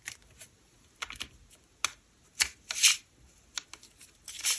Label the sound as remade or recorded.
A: recorded